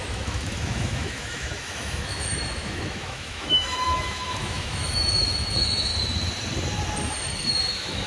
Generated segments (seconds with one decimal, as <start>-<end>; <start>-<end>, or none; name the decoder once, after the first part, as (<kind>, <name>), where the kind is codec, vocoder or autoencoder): 0.0-5.9 (autoencoder, DAC-VAE); 7.5-8.1